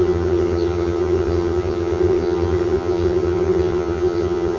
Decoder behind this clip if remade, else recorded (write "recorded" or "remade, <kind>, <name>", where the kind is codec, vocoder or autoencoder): remade, vocoder, HiFi-GAN